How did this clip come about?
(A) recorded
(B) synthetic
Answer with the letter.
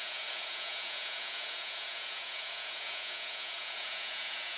B